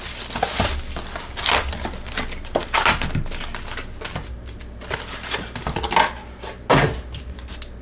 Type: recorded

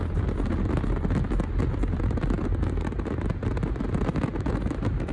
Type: recorded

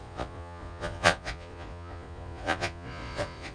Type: remade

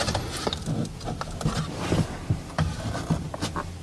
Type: recorded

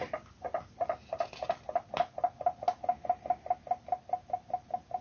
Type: recorded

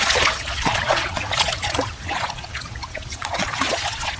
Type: remade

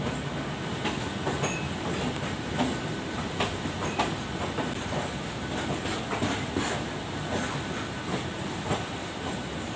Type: recorded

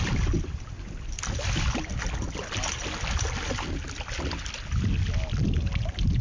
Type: recorded